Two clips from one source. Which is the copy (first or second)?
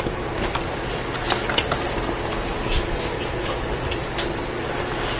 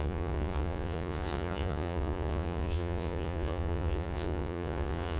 second